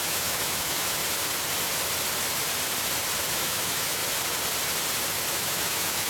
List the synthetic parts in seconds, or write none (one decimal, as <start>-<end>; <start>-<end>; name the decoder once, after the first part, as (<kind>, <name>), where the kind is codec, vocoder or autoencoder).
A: 0.0-1.0 (autoencoder, DAC-VAE); 3.3-4.0; 5.3-6.1